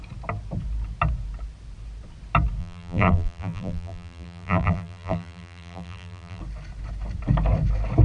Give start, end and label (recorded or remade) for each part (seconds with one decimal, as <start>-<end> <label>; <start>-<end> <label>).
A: 0.0-2.6 recorded; 2.6-6.4 remade; 6.4-8.0 recorded

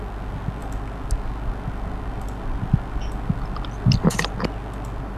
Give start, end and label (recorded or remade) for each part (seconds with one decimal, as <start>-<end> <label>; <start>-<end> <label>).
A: 0.0-5.2 recorded

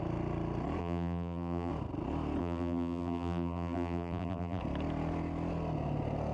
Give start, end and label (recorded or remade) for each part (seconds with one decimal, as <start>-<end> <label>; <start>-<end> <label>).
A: 0.0-0.8 recorded; 0.8-1.7 remade; 1.7-2.4 recorded; 2.4-4.6 remade; 4.6-6.3 recorded

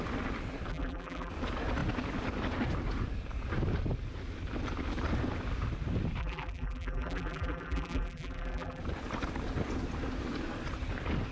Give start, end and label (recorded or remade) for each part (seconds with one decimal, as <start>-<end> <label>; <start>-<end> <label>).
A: 0.0-0.7 recorded; 0.7-1.3 remade; 1.3-6.2 recorded; 6.2-8.8 remade; 8.8-11.3 recorded

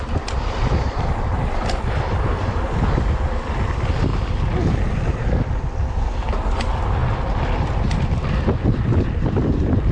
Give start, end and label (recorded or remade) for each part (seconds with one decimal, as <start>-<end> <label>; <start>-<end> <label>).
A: 0.0-4.1 remade; 4.1-6.0 recorded; 6.0-9.9 remade

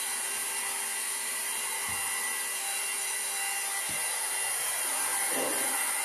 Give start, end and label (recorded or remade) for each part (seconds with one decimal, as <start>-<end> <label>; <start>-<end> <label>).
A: 0.0-0.4 recorded; 0.4-1.6 remade; 1.6-5.1 recorded; 5.1-6.0 remade

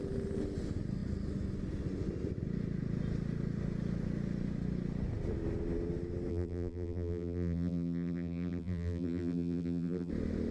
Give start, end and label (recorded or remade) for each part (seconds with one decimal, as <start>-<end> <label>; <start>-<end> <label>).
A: 0.0-6.3 recorded; 6.3-10.1 remade; 10.1-10.5 recorded

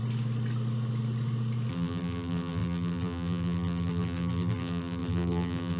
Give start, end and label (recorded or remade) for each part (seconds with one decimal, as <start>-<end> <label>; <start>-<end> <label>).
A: 0.0-1.7 recorded; 1.7-5.8 remade